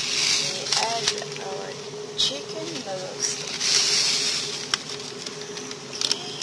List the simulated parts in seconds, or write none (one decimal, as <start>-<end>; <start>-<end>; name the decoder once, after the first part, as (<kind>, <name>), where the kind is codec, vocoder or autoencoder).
none